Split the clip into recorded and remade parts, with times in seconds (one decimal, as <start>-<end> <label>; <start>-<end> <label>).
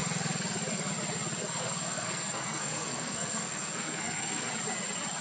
0.0-1.4 recorded; 1.4-4.5 remade; 4.5-5.2 recorded